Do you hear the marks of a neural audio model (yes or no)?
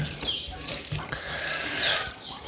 yes